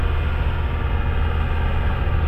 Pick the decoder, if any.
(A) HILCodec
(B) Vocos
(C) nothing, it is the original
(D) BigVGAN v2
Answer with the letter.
C